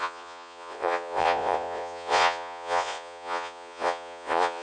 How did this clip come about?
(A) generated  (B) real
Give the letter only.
A